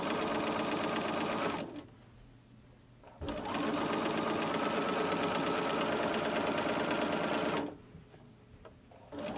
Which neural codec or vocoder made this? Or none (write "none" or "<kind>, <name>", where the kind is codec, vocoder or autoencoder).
none